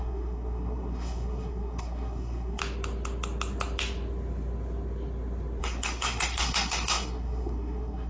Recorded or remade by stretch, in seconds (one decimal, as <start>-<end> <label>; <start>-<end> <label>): 0.0-2.6 remade; 2.6-5.6 recorded; 5.6-8.1 remade